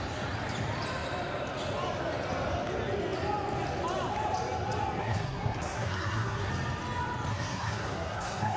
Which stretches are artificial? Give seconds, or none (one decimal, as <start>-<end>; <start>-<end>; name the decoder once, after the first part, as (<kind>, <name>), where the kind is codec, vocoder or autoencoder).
5.0-6.5 (codec, SNAC); 7.3-8.6